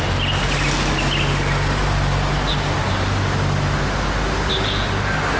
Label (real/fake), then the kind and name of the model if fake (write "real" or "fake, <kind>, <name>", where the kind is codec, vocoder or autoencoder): real